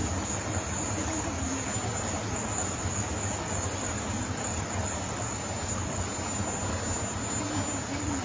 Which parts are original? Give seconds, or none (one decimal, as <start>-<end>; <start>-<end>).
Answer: 0.0-8.2